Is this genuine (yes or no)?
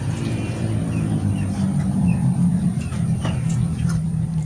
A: no